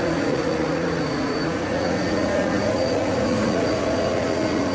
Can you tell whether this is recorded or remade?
remade